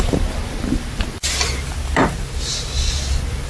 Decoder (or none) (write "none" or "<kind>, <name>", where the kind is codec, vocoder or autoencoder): none